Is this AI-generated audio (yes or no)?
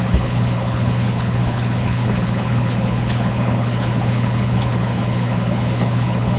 yes